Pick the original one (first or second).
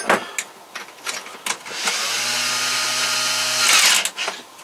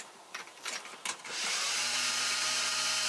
first